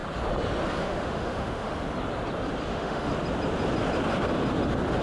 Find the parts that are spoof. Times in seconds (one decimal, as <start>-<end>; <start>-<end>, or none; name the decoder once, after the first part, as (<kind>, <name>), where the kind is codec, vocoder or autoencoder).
0.8-1.7 (autoencoder, DAC-VAE); 2.7-3.1